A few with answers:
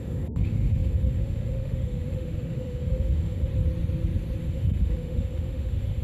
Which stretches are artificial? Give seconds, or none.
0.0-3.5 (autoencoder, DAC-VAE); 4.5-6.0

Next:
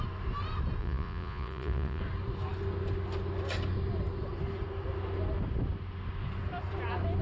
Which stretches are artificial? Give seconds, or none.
0.8-2.0 (vocoder, Vocos)